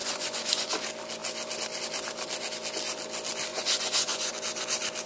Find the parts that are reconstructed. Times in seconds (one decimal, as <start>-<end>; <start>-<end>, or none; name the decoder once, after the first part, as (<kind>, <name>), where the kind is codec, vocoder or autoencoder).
0.0-0.7 (vocoder, Vocos); 3.5-4.3